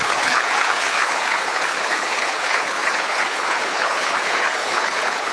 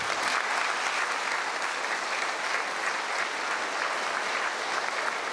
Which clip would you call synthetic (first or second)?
first